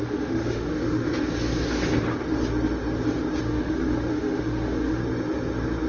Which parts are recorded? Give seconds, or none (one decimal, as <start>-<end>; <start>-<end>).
1.0-3.4; 5.0-5.9